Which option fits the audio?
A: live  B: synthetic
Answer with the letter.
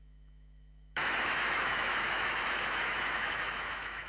B